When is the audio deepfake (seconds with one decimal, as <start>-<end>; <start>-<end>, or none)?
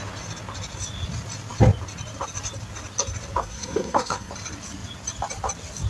3.4-4.3